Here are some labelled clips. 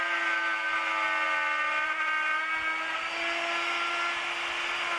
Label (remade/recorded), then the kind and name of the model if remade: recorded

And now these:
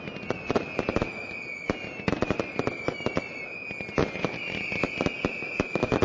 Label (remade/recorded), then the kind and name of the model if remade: recorded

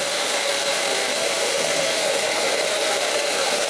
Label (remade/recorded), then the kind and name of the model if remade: remade, autoencoder, DAC-VAE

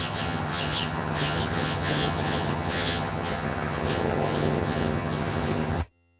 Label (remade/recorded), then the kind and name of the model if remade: remade, vocoder, HiFi-GAN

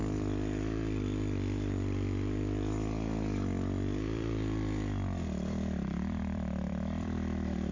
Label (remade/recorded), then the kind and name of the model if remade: remade, vocoder, BigVGAN v2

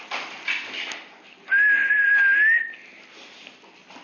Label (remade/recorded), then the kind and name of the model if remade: recorded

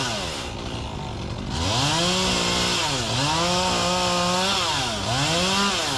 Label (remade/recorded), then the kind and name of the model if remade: recorded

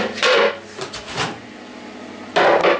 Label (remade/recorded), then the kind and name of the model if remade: recorded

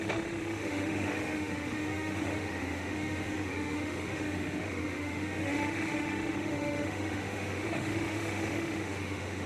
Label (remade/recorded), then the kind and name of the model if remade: remade, autoencoder, DAC-VAE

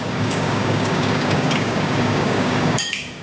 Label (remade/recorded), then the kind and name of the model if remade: remade, codec, DAC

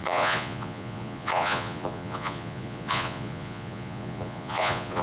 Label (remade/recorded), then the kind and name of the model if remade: remade, vocoder, Vocos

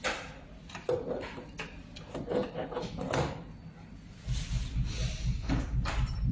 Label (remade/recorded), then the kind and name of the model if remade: recorded